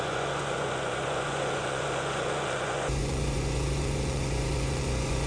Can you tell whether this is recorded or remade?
remade